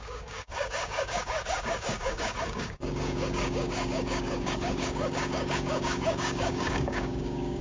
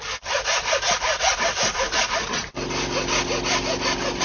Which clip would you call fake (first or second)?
first